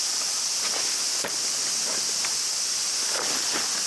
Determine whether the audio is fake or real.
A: real